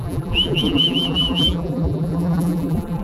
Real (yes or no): no